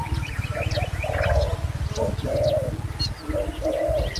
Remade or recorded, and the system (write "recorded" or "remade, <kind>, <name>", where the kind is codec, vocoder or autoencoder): recorded